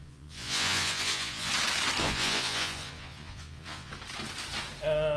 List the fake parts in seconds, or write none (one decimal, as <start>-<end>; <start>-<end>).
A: 0.0-1.5; 2.0-3.9